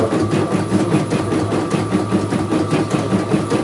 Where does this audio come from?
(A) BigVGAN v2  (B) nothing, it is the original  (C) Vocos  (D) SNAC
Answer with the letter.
B